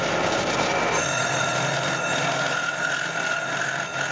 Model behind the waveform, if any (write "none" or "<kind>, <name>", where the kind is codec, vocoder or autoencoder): none